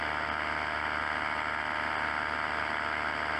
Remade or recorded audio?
recorded